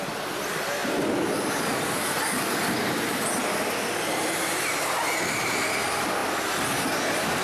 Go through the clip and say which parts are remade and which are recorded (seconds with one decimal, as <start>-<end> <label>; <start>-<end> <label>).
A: 0.0-7.4 recorded

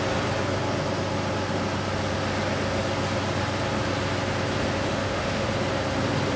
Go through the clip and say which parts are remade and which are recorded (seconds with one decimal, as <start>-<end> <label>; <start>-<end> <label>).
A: 0.0-4.9 recorded; 4.9-5.5 remade; 5.5-6.4 recorded

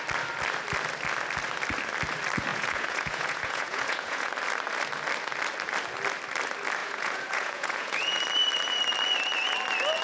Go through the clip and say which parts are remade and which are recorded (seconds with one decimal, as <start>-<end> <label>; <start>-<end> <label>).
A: 0.0-2.5 recorded; 2.5-4.3 remade; 4.3-6.8 recorded; 6.8-8.2 remade; 8.2-10.0 recorded

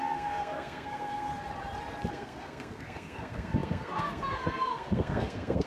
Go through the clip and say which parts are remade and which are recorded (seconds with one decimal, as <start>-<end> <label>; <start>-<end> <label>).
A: 0.0-1.3 remade; 1.3-2.1 recorded; 2.1-5.7 remade